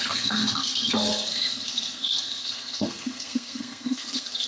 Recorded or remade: remade